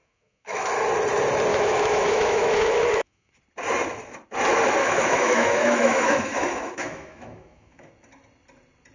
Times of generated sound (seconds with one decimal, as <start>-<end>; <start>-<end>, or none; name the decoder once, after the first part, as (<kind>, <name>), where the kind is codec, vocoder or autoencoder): 0.0-0.7 (autoencoder, DAC-VAE); 1.5-3.3; 4.8-7.9